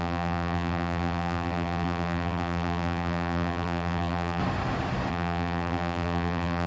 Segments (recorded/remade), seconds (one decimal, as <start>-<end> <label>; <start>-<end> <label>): 0.0-4.4 remade; 4.4-5.1 recorded; 5.1-6.7 remade